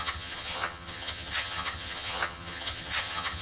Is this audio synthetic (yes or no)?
yes